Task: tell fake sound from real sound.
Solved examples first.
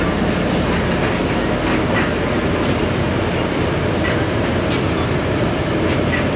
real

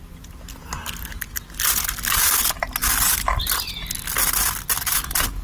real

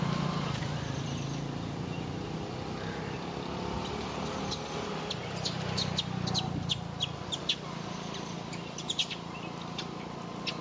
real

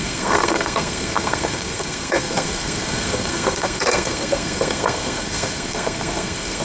fake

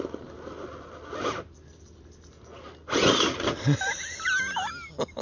real